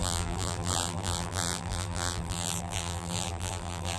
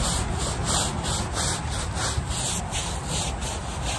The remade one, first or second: first